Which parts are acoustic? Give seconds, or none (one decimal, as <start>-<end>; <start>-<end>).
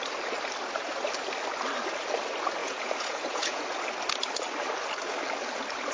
0.0-2.6; 3.6-5.9